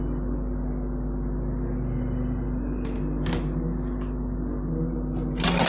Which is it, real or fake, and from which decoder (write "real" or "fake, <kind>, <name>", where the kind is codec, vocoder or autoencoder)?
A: real